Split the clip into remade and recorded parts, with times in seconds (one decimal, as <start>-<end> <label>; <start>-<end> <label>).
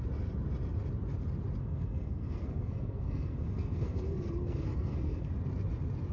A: 0.0-1.6 recorded; 1.6-5.3 remade; 5.3-6.1 recorded